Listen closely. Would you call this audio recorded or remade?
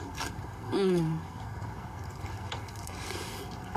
remade